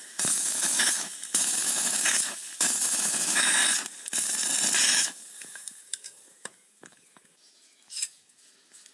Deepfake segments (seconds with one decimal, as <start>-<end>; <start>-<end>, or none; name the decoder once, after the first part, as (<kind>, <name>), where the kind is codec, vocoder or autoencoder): 0.0-3.6 (autoencoder, DAC-VAE); 4.8-8.9